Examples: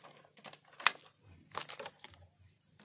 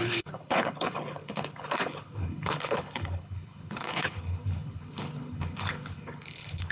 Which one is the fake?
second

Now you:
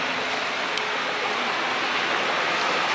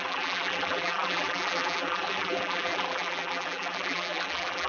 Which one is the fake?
second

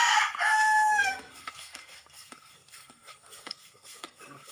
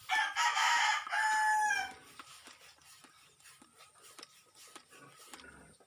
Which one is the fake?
first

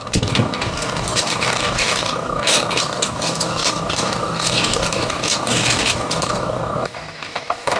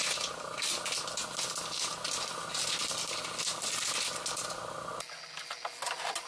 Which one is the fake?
first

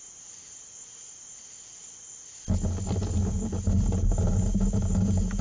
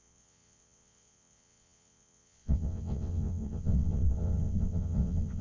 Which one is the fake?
second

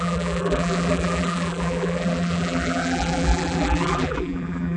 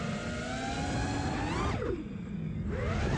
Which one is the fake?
first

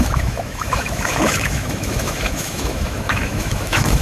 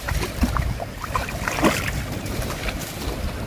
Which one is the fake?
first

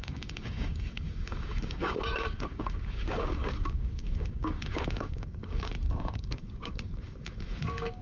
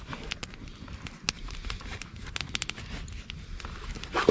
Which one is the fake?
first